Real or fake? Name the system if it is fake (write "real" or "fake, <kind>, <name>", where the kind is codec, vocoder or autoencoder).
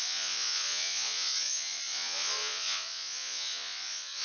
fake, vocoder, Vocos